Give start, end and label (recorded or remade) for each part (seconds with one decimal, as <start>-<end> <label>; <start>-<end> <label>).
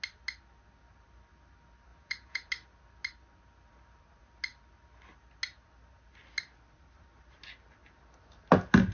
0.0-1.9 recorded; 1.9-2.5 remade; 2.5-8.9 recorded